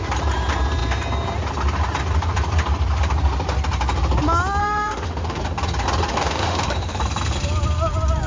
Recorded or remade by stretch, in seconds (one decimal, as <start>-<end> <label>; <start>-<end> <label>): 0.0-4.6 recorded; 4.6-5.4 remade; 5.4-6.1 recorded; 6.1-7.0 remade; 7.0-8.3 recorded

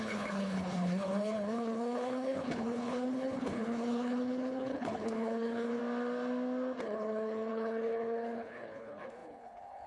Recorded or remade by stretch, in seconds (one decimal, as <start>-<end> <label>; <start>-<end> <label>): 0.0-5.8 remade; 5.8-6.8 recorded; 6.8-9.9 remade

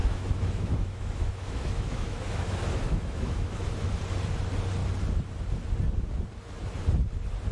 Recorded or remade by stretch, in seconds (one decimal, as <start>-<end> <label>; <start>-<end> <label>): 0.0-4.0 remade; 4.0-7.5 recorded

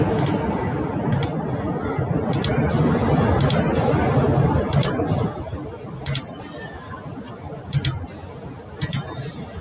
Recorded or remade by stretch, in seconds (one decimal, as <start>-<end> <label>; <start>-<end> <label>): 0.0-9.6 recorded

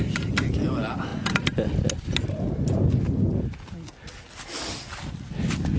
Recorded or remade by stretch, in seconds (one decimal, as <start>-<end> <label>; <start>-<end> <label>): 0.0-5.8 recorded

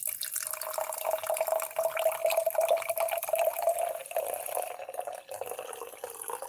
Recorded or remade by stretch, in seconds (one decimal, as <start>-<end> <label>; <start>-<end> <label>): 0.0-6.5 recorded

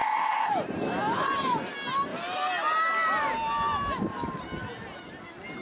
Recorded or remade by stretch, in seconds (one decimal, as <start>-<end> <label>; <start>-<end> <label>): 0.0-0.5 remade; 0.5-5.6 recorded